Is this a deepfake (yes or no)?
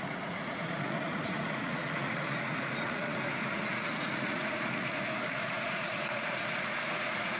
yes